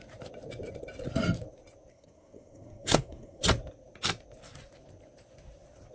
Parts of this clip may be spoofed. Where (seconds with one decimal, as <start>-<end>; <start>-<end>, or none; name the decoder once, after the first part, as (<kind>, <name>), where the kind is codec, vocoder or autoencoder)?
1.9-3.4 (codec, SNAC)